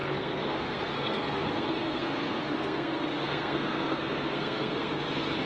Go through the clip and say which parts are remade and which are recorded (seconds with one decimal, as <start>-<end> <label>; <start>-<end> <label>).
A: 0.0-5.5 remade